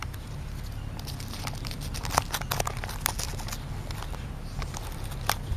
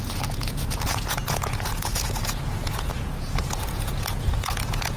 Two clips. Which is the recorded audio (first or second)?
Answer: first